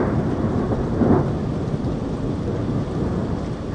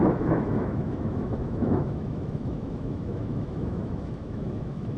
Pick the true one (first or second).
first